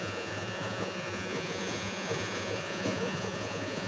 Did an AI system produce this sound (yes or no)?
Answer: yes